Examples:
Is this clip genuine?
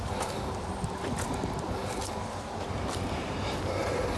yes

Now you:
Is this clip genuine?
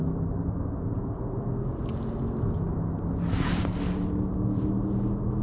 yes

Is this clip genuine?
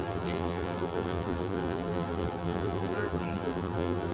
no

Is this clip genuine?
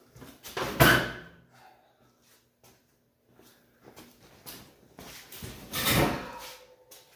yes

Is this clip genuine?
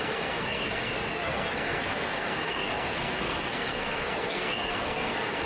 no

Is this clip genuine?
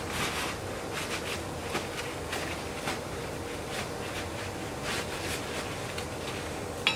yes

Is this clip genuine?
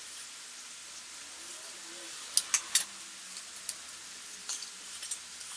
yes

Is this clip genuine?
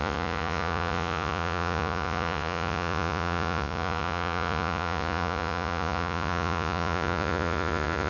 no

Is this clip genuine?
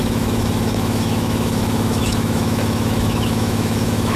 no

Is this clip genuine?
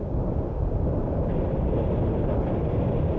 yes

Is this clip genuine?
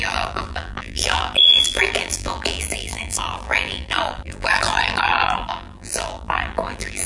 no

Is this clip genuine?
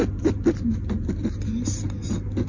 yes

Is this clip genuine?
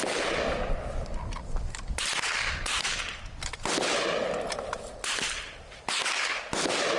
yes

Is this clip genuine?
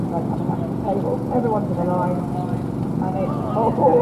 yes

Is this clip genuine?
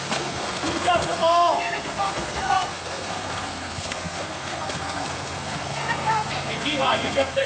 no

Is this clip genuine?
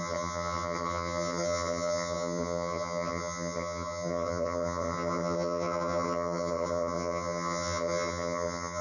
no